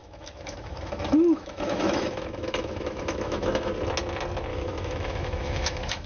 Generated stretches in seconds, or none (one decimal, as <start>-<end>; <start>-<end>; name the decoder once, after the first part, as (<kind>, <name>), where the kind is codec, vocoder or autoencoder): 0.0-3.7 (autoencoder, DAC-VAE); 4.5-6.1